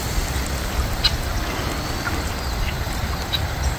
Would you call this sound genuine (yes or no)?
yes